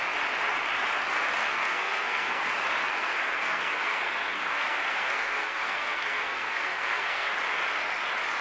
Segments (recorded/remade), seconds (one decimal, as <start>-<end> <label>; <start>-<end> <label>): 0.0-1.4 recorded; 1.4-2.4 remade; 2.4-2.8 recorded; 2.8-7.3 remade; 7.3-8.4 recorded